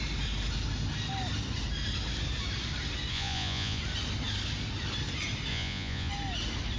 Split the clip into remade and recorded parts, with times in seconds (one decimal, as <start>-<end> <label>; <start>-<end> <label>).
0.0-3.1 recorded; 3.1-3.8 remade; 3.8-5.5 recorded; 5.5-6.1 remade; 6.1-6.8 recorded